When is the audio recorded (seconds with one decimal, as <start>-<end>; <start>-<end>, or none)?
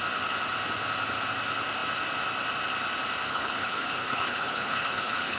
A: 0.0-3.3